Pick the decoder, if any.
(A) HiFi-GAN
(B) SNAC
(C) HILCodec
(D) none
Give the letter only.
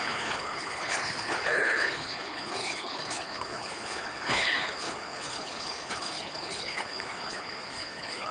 C